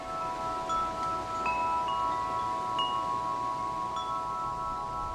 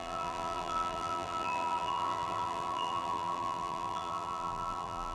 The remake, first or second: second